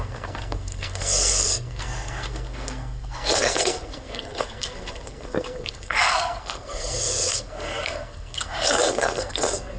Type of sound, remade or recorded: remade